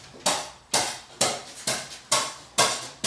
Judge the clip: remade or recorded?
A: recorded